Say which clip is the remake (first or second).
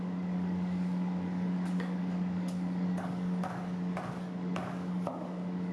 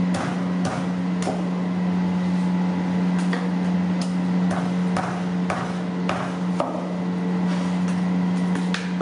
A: first